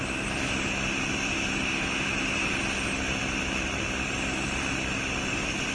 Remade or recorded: recorded